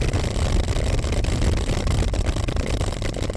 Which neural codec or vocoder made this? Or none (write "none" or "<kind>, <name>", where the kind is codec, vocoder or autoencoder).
none